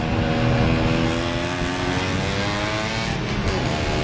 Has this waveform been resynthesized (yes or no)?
no